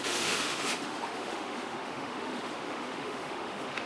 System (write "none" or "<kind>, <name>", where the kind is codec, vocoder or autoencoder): autoencoder, DAC-VAE